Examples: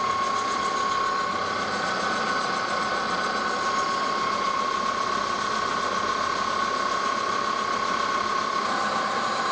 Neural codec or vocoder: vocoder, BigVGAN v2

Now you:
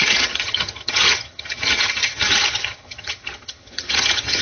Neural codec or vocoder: vocoder, HiFi-GAN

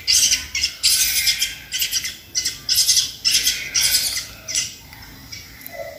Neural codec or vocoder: none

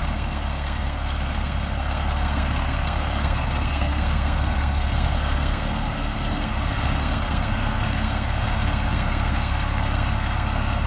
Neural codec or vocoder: codec, SNAC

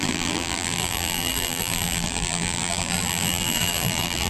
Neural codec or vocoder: vocoder, BigVGAN v2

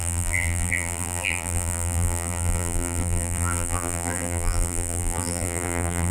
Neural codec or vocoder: vocoder, BigVGAN v2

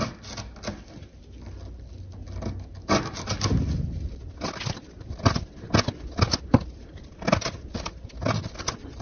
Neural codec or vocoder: none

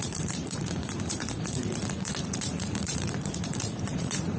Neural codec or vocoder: vocoder, Vocos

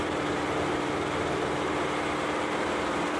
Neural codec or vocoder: none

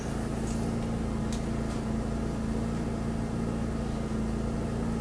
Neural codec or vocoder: none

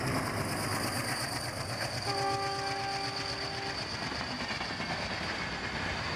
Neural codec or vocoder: none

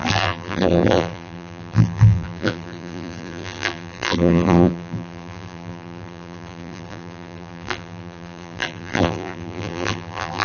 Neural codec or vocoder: vocoder, BigVGAN v2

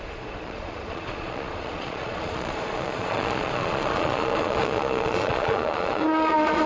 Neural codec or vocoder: vocoder, Vocos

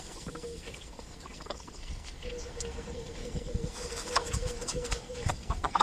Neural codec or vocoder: codec, SNAC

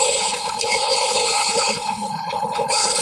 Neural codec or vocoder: codec, HILCodec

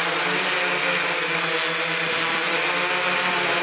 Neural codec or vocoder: none